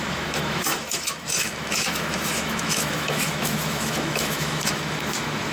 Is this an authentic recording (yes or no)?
no